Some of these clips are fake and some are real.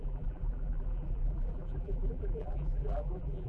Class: fake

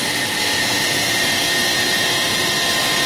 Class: real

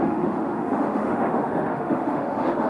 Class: fake